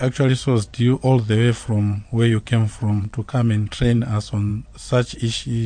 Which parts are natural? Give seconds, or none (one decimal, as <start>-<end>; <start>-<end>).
0.0-1.6; 4.0-5.7